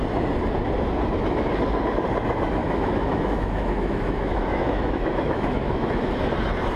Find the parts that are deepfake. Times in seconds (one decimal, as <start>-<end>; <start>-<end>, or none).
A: 2.6-6.1